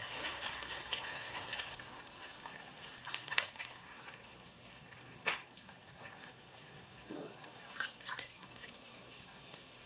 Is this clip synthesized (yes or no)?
yes